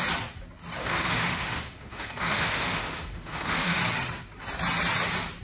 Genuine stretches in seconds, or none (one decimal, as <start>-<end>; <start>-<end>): 0.0-0.8; 3.8-5.4